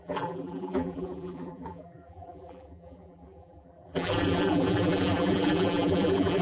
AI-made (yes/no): yes